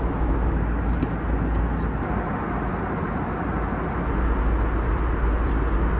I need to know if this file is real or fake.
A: real